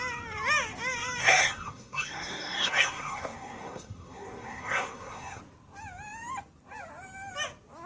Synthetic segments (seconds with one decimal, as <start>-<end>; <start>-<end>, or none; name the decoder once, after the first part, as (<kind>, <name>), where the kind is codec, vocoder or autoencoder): 1.2-5.4 (codec, SNAC)